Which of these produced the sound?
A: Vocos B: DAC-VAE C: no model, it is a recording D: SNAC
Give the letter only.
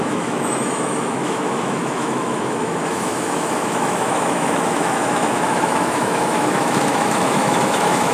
B